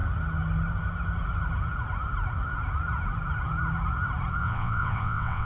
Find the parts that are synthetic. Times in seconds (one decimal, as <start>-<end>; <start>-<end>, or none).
4.4-5.5